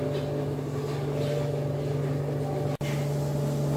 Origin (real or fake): real